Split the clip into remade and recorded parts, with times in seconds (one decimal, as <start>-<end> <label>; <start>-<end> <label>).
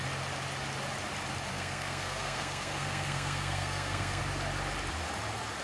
0.0-1.5 recorded; 1.5-4.2 remade; 4.2-5.6 recorded